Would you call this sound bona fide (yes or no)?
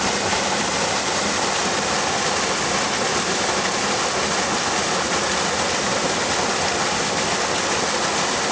yes